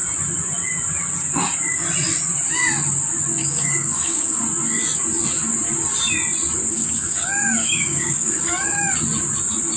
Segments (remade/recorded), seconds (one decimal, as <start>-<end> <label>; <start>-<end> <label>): 0.0-3.4 recorded; 3.4-4.4 remade; 4.4-6.7 recorded; 6.7-9.0 remade; 9.0-9.8 recorded